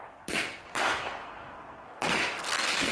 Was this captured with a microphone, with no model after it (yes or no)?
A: no